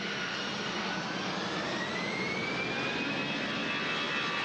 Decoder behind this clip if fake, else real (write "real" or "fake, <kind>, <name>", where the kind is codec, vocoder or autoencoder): real